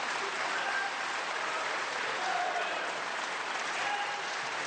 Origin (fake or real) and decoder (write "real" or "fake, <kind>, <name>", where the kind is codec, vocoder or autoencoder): fake, vocoder, BigVGAN v2